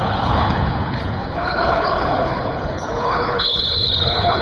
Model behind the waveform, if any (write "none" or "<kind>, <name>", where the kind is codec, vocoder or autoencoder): codec, HILCodec